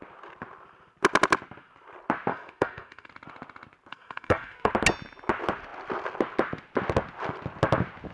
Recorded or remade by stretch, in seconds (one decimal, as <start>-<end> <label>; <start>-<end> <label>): 0.0-2.3 recorded; 2.3-3.1 remade; 3.1-3.9 recorded; 3.9-4.7 remade; 4.7-8.1 recorded